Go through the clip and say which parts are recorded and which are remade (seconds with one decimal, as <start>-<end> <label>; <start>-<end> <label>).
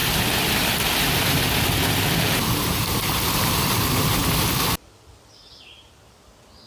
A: 0.0-6.7 recorded